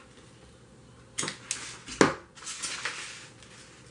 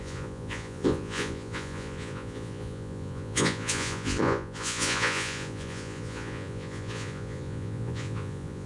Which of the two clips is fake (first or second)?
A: second